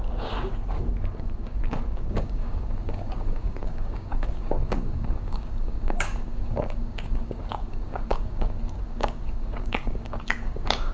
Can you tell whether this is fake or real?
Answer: fake